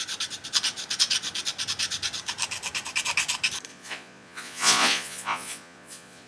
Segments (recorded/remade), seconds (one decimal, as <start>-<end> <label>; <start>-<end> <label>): 0.0-3.7 recorded; 3.7-6.3 remade